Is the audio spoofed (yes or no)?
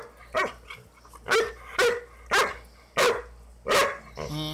no